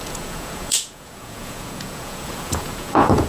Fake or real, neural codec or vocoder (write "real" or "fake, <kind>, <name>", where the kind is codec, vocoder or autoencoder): fake, vocoder, Vocos